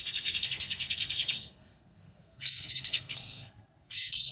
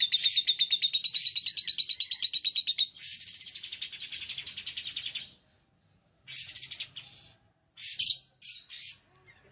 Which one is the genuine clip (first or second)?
second